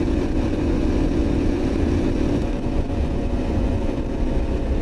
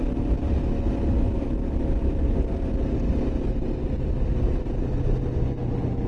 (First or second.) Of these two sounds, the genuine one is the second